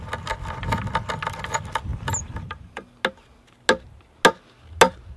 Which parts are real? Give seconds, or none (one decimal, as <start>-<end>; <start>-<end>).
0.0-1.9; 3.0-5.2